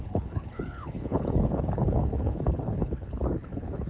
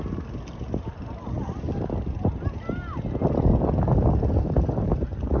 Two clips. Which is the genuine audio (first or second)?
second